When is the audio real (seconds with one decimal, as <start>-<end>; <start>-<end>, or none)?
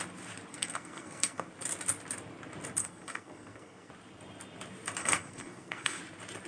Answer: 0.0-0.5; 1.5-2.8; 3.9-5.0; 6.0-6.5